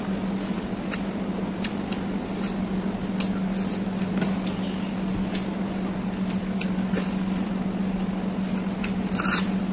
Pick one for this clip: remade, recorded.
recorded